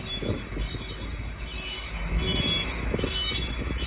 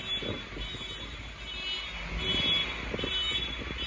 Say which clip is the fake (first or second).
first